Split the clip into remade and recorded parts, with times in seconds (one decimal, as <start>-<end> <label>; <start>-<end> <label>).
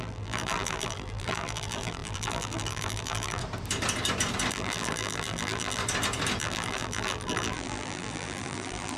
0.0-3.4 remade; 3.4-4.5 recorded; 4.5-5.8 remade; 5.8-6.4 recorded; 6.4-9.0 remade